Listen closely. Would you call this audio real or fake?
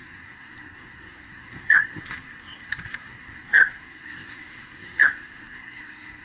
fake